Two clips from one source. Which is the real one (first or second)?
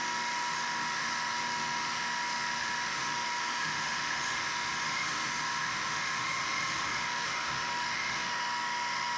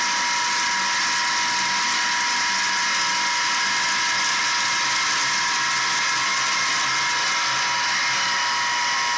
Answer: second